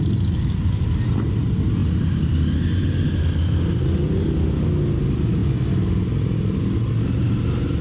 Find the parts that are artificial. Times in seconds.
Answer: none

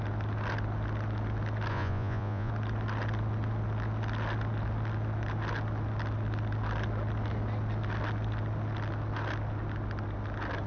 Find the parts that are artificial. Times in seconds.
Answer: 1.7-2.5 (vocoder, Vocos)

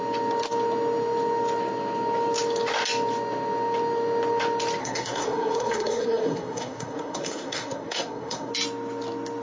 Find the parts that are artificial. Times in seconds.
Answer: 4.8-8.5 (codec, SNAC)

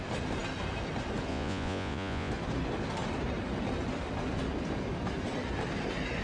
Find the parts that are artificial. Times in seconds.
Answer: 1.3-2.3 (vocoder, Vocos)